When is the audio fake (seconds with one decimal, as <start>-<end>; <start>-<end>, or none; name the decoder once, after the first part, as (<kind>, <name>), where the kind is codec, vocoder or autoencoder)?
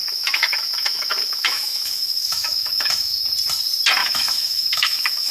0.0-3.2 (autoencoder, DAC-VAE); 4.0-5.3